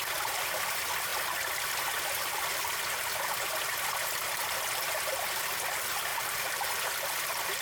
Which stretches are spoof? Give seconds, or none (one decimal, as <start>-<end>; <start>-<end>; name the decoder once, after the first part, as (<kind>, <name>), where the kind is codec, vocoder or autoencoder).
none